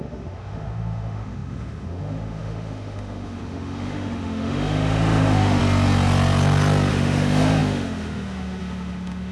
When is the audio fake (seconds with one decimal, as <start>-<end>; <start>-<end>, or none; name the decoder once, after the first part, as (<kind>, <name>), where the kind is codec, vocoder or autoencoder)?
0.0-5.6 (autoencoder, DAC-VAE); 6.9-9.3

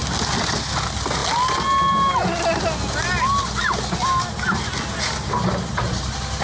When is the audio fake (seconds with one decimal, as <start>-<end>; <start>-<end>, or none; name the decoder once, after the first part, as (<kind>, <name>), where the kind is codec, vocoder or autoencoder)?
none

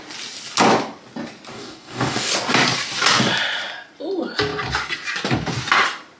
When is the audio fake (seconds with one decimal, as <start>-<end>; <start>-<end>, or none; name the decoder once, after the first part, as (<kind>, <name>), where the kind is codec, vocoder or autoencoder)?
1.5-2.3 (codec, DAC)

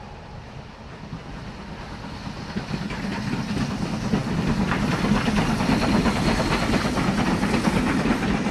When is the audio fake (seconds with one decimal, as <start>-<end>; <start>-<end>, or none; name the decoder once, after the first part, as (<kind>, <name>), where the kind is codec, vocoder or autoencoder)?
none

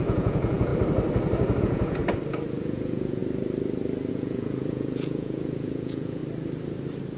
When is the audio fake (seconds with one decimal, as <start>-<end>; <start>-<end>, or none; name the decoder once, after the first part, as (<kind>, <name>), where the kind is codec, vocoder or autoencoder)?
0.0-0.7 (vocoder, Vocos); 1.6-2.0; 2.5-3.2; 4.1-6.2